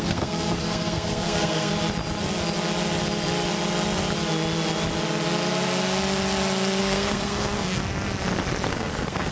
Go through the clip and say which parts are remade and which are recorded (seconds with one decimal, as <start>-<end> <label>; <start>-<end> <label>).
0.0-1.7 remade; 1.7-6.8 recorded; 6.8-7.8 remade; 7.8-8.7 recorded; 8.7-9.3 remade